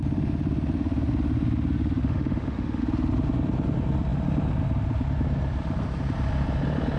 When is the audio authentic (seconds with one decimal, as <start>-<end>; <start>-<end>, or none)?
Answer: 0.0-2.0; 2.8-7.0